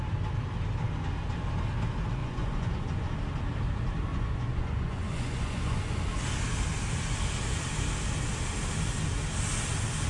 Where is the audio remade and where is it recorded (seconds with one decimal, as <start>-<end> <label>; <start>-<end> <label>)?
0.0-2.2 recorded; 2.2-3.1 remade; 3.1-4.1 recorded; 4.1-5.9 remade; 5.9-10.1 recorded